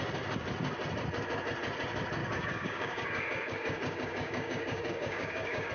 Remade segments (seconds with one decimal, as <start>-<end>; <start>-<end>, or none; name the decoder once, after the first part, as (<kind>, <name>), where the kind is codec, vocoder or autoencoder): 2.2-5.7 (codec, DAC)